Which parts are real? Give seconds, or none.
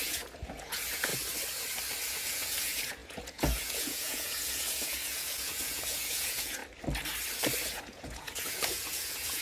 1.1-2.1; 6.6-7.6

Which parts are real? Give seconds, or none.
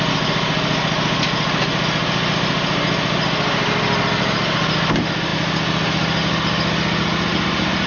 0.0-7.9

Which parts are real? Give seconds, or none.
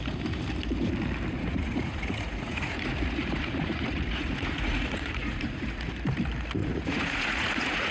0.0-1.3; 5.9-6.6